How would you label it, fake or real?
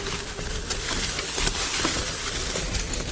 real